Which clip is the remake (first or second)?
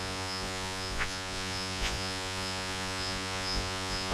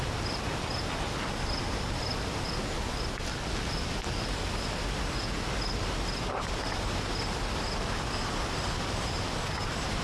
first